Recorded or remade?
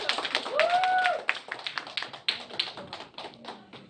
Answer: recorded